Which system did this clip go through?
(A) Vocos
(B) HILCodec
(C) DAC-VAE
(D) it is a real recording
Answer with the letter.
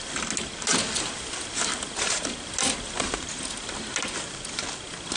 D